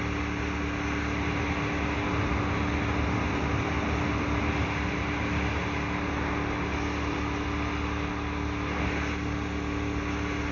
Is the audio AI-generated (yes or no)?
no